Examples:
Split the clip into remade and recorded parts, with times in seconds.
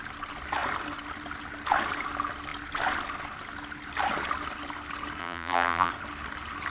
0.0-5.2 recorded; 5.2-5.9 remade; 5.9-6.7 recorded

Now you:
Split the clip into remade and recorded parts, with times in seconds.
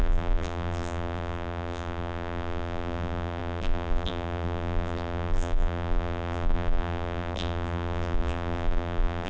0.0-9.3 remade